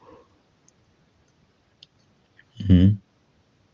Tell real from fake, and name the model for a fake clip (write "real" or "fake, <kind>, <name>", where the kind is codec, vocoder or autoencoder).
real